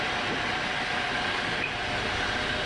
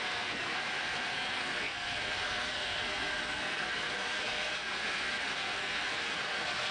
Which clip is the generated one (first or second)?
second